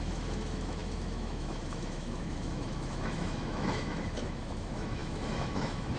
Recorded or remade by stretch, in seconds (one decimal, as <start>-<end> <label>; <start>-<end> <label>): 0.0-6.0 remade